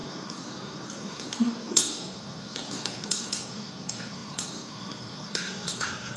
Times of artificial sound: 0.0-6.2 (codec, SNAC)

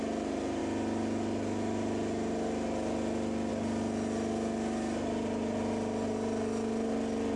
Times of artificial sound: none

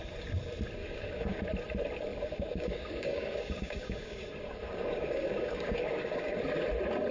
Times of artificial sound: 0.8-1.4 (codec, DAC); 2.1-6.4